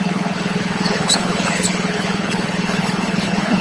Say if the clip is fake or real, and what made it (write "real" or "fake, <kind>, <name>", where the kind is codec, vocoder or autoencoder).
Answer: fake, codec, HILCodec